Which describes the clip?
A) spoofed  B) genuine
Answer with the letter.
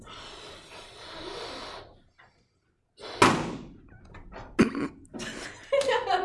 B